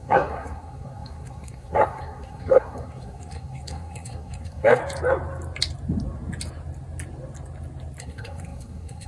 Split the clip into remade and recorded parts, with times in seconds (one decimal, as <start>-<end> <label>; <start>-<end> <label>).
0.0-4.8 remade; 4.8-8.0 recorded; 8.0-9.1 remade